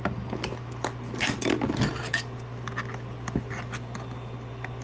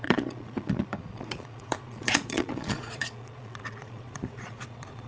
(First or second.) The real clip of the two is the first